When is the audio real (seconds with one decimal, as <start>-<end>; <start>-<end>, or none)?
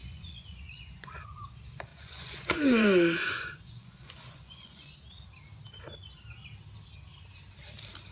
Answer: 1.5-1.9; 4.9-8.1